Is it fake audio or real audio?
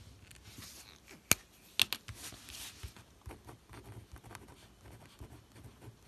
real